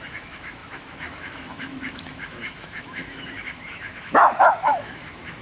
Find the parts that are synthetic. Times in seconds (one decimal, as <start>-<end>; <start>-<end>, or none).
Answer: 0.0-5.4